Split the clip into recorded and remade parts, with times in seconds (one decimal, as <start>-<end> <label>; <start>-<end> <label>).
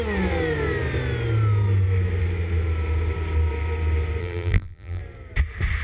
0.0-4.2 recorded; 4.2-5.0 remade; 5.0-5.8 recorded